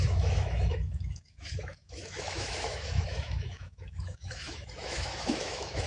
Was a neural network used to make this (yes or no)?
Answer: yes